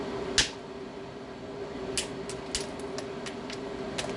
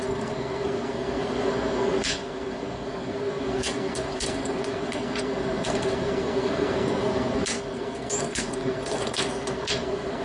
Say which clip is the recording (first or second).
first